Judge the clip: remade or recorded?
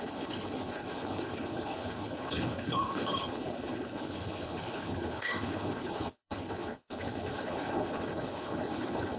remade